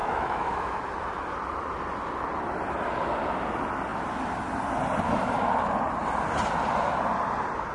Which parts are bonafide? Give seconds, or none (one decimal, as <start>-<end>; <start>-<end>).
0.8-7.7